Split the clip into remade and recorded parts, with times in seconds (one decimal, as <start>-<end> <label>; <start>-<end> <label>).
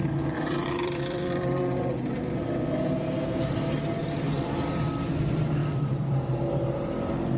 0.0-1.6 remade; 1.6-5.6 recorded; 5.6-6.2 remade; 6.2-7.4 recorded